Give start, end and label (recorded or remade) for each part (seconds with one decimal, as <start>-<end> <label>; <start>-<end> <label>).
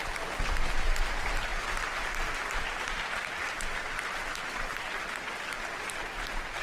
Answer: 0.0-6.6 recorded